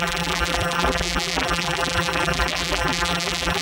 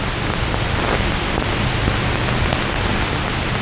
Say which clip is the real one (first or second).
second